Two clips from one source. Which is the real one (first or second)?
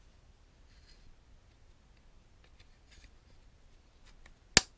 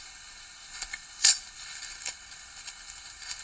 first